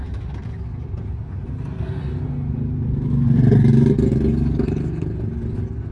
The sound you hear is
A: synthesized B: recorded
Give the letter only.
B